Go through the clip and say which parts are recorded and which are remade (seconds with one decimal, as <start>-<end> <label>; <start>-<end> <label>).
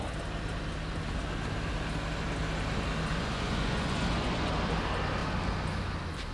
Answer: 0.0-3.1 recorded; 3.1-4.5 remade; 4.5-6.3 recorded